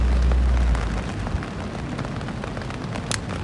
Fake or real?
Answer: real